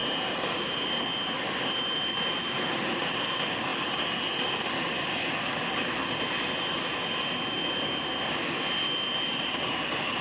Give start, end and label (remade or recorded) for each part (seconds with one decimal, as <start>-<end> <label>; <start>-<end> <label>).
0.0-10.2 recorded